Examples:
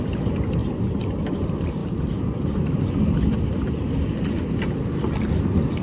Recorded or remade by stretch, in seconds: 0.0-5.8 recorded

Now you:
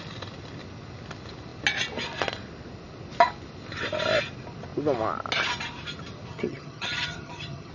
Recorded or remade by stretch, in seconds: 0.0-6.3 recorded; 6.3-7.7 remade

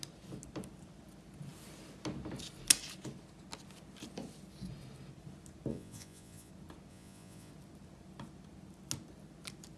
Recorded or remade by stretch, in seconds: 0.0-5.7 recorded; 5.7-6.5 remade; 6.5-6.9 recorded; 6.9-7.5 remade; 7.5-9.8 recorded

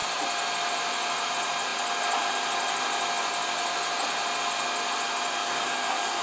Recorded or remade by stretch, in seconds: 0.0-5.4 recorded; 5.4-6.2 remade

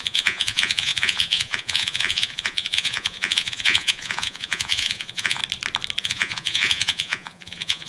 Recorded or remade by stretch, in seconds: 0.0-5.4 remade; 5.4-6.0 recorded; 6.0-7.9 remade

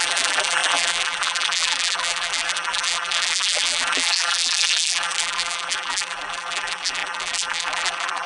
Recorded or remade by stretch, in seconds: 0.0-8.3 remade